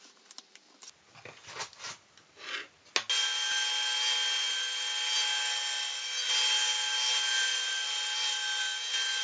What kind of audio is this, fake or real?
real